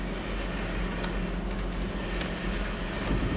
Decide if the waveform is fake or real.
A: real